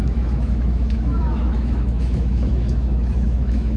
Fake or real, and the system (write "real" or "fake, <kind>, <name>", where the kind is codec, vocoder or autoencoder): fake, autoencoder, DAC-VAE